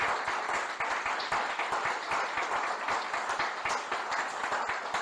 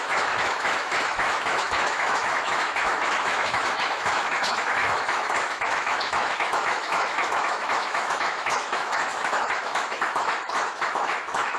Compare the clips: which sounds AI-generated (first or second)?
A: second